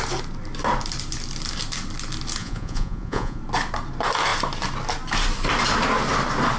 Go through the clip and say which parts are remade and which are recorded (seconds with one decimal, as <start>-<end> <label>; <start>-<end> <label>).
0.0-2.4 recorded; 2.4-3.4 remade; 3.4-6.6 recorded